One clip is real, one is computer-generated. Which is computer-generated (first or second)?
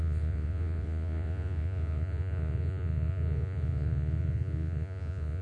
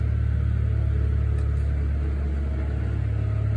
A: first